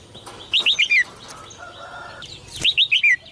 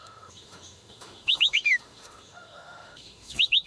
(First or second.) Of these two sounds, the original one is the first